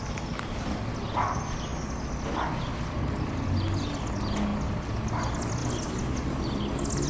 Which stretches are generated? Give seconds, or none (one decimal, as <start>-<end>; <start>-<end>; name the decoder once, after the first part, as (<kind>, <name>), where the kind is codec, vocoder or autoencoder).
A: none